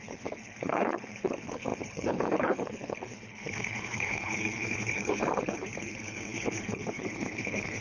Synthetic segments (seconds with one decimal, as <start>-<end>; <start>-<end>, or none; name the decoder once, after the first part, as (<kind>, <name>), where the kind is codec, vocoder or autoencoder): 0.0-7.8 (codec, HILCodec)